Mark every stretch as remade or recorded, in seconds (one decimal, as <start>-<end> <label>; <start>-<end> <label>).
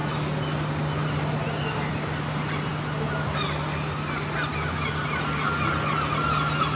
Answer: 0.0-6.8 recorded